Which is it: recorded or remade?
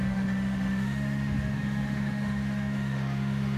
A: remade